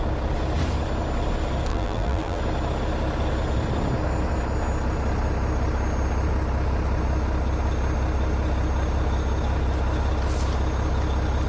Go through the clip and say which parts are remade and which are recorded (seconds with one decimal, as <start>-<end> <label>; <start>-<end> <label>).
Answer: 0.0-1.7 recorded; 1.7-2.4 remade; 2.4-11.5 recorded